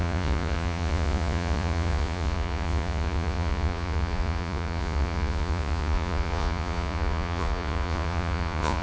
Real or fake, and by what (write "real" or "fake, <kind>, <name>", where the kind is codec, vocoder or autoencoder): fake, vocoder, Vocos